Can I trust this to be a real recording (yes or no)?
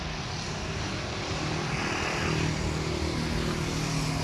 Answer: yes